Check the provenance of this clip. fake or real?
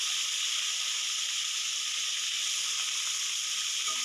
real